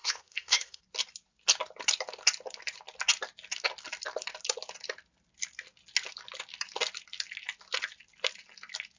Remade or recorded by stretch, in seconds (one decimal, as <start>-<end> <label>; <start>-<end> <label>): 0.0-0.8 remade; 0.8-9.0 recorded